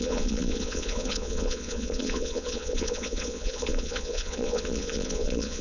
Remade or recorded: remade